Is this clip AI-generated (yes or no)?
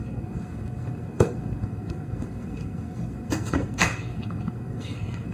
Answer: yes